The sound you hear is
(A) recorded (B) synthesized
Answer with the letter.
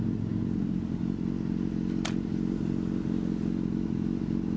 A